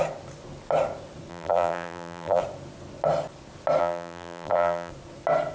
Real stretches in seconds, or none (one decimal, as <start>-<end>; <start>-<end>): 0.0-1.3; 2.4-3.8; 4.9-5.5